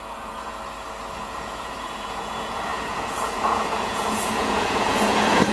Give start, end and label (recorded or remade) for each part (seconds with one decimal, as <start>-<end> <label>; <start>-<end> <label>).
0.0-0.5 remade; 0.5-1.1 recorded; 1.1-5.5 remade